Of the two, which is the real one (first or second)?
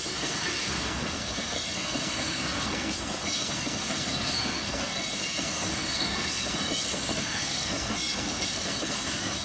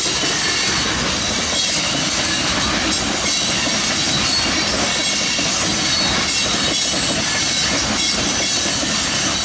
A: second